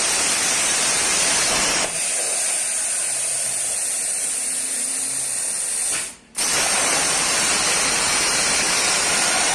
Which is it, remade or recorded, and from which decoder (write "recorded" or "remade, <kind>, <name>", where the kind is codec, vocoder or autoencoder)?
recorded